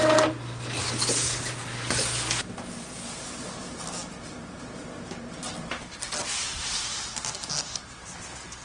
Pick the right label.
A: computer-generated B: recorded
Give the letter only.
B